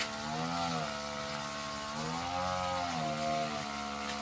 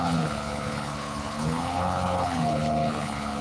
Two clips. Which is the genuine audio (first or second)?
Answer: first